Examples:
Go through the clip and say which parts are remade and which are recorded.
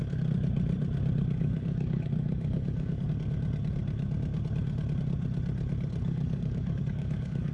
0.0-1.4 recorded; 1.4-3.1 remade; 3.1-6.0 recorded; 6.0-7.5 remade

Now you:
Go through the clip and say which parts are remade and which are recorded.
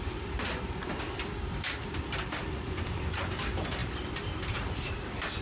0.0-5.4 recorded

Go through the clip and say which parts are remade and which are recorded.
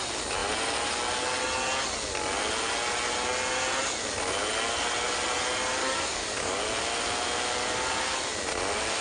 0.0-5.8 recorded; 5.8-6.6 remade; 6.6-9.0 recorded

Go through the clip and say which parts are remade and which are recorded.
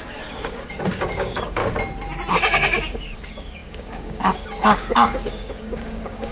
0.0-1.6 remade; 1.6-2.3 recorded; 2.3-6.3 remade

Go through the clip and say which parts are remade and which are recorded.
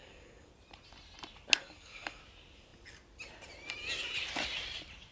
0.0-0.5 remade; 0.5-1.6 recorded; 1.6-2.2 remade; 2.2-5.1 recorded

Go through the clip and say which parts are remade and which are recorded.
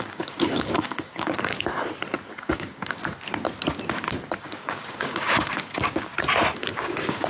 0.0-1.5 remade; 1.5-2.4 recorded; 2.4-3.0 remade; 3.0-4.4 recorded; 4.4-6.1 remade; 6.1-6.7 recorded; 6.7-7.3 remade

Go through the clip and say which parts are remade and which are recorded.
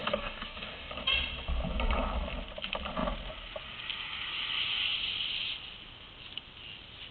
0.0-0.9 remade; 0.9-7.1 recorded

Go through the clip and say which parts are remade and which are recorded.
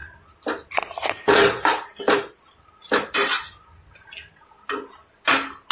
0.0-5.7 recorded